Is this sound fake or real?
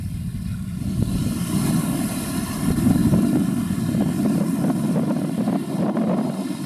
fake